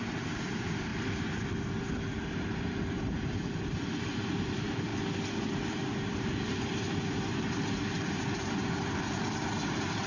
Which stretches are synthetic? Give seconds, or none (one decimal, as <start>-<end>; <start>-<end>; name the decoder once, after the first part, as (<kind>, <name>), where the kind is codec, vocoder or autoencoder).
0.0-0.9 (vocoder, BigVGAN v2); 2.9-4.9; 5.7-10.1